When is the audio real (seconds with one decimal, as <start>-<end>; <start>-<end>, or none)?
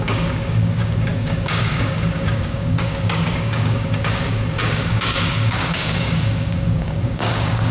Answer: none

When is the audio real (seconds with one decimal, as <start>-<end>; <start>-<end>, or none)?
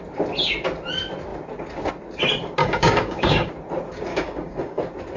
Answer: 0.0-2.6; 3.5-4.1; 4.8-5.2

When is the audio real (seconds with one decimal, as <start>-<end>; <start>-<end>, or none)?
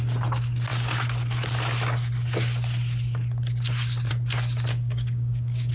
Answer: 0.0-4.7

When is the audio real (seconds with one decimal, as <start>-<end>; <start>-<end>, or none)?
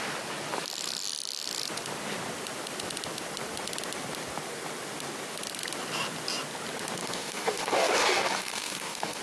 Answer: 0.0-7.0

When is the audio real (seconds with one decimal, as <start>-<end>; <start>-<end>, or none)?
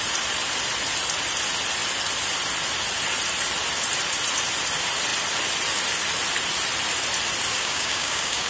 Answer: 0.0-7.5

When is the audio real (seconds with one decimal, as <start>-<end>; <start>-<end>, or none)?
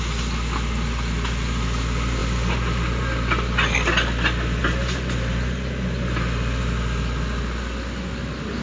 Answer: 0.0-8.6